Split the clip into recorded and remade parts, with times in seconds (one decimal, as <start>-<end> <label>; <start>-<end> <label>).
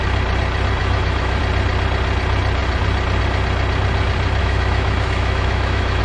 0.0-0.8 recorded; 0.8-1.4 remade; 1.4-4.4 recorded; 4.4-6.0 remade